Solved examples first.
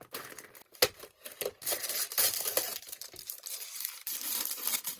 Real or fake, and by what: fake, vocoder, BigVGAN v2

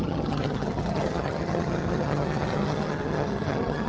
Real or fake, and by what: fake, vocoder, HiFi-GAN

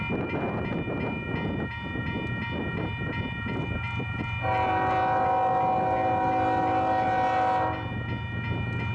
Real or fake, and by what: real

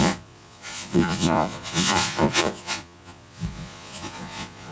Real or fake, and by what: fake, vocoder, Vocos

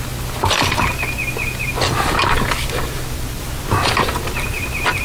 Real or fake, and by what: real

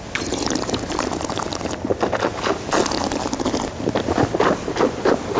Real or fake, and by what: real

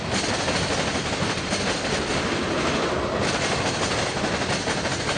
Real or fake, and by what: real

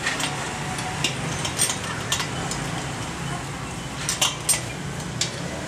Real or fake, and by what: real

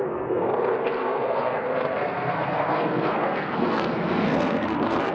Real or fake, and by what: fake, codec, SNAC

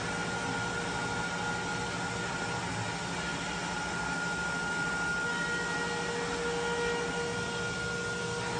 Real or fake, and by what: real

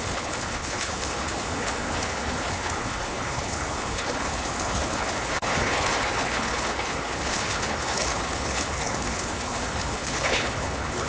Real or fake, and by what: fake, codec, HILCodec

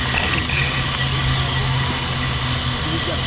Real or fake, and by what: real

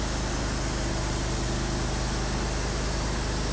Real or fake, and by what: real